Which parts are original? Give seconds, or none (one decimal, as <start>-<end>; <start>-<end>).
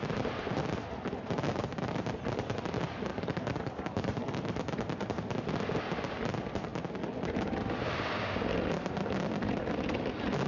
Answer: 0.0-3.1; 4.6-10.5